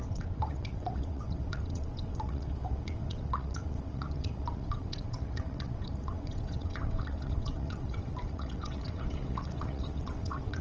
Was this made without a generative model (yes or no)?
no